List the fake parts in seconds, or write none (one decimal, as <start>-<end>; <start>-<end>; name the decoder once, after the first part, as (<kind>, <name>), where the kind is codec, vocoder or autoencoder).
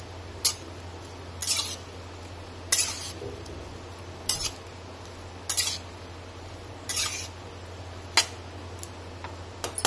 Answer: none